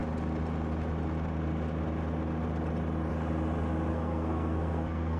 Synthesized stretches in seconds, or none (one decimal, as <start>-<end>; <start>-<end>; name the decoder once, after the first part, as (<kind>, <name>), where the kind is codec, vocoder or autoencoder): 3.9-5.2 (codec, SNAC)